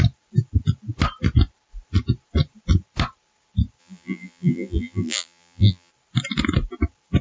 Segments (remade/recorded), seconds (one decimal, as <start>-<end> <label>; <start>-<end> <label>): 0.0-3.8 recorded; 3.8-5.9 remade; 5.9-7.2 recorded